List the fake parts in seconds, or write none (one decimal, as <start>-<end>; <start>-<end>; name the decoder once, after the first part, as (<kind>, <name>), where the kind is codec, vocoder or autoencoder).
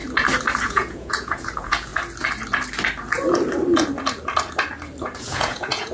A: 0.6-1.9 (vocoder, Vocos); 5.2-5.9